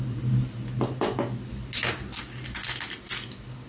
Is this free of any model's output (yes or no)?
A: yes